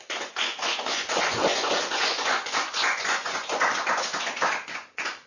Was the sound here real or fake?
fake